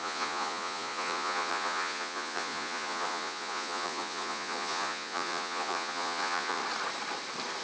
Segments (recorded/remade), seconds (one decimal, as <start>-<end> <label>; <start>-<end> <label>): 0.0-6.6 remade; 6.6-7.6 recorded